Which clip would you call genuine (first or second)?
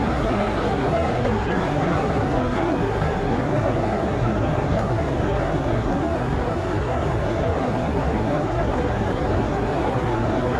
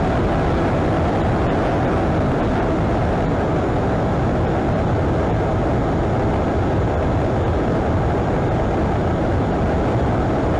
second